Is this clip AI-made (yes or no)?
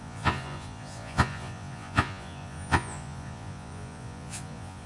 yes